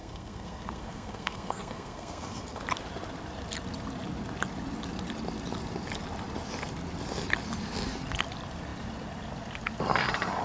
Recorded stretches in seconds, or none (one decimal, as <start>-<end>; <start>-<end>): 2.6-10.4